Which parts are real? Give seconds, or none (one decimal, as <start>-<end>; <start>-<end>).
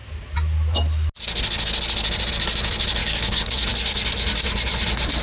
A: 0.0-3.0; 3.7-5.2